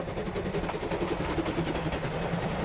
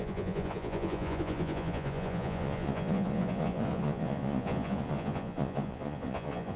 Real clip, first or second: first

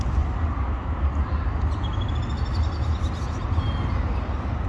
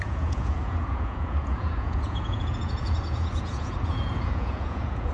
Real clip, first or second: first